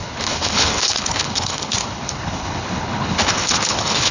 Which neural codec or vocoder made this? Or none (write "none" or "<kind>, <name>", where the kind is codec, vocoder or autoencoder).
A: codec, HILCodec